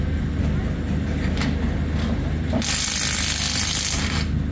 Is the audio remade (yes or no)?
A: no